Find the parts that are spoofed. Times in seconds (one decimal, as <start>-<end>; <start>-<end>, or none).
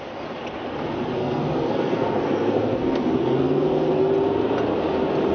1.2-4.1